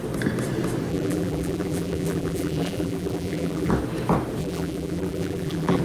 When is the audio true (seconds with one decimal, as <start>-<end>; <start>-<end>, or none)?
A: 0.0-0.9; 3.7-4.4

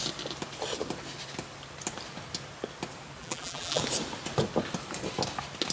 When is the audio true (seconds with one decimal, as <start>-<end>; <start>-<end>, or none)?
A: 0.0-3.2; 3.8-5.7

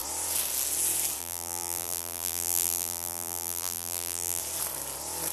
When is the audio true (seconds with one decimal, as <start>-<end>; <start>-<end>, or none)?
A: 0.0-1.2; 4.4-5.3

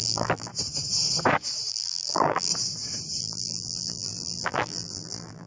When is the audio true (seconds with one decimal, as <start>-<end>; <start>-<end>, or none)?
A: 0.5-1.7; 2.5-3.2